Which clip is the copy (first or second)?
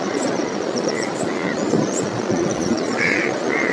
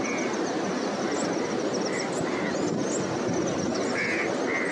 first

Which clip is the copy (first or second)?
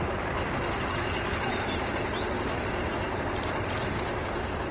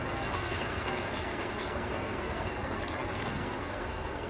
second